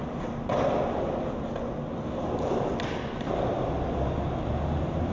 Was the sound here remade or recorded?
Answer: recorded